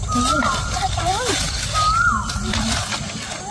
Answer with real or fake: real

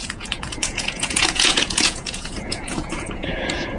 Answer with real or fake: fake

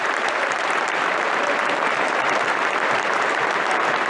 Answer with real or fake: fake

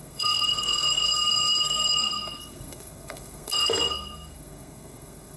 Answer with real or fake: fake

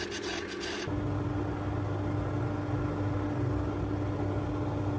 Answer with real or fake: real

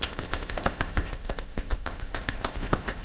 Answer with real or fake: fake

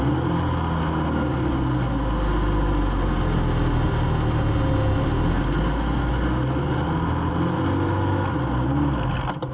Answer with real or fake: real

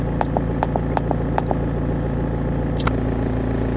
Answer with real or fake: real